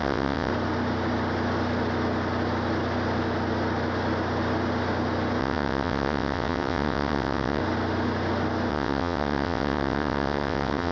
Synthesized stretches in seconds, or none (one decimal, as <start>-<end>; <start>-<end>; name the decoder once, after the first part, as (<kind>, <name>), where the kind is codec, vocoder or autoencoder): 0.0-0.5 (vocoder, WaveNeXt); 5.4-7.6; 8.7-10.9

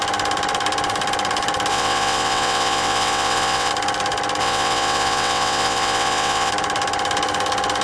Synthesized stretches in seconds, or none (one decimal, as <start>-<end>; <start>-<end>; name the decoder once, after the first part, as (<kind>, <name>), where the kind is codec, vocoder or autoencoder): 1.7-3.7 (vocoder, WaveNeXt); 4.4-6.5

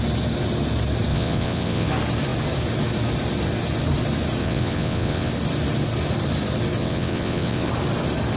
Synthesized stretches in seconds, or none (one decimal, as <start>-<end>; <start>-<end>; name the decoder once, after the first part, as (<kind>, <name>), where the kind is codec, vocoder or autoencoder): 1.1-1.9 (vocoder, WaveNeXt); 4.4-5.3; 6.8-7.7

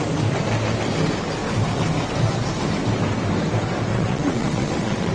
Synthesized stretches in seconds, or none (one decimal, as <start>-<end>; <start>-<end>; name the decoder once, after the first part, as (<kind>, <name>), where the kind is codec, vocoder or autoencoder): 3.9-5.1 (vocoder, WaveNeXt)

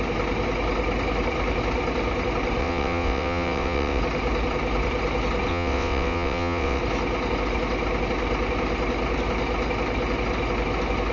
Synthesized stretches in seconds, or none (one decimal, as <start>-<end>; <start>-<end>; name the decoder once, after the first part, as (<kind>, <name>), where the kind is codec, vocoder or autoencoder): 2.6-4.0 (vocoder, WaveNeXt); 5.5-6.8

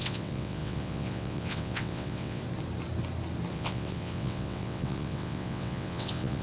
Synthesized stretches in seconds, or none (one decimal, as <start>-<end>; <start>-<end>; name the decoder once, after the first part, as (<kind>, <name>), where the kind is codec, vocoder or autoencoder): 0.0-2.4 (vocoder, WaveNeXt); 3.5-6.4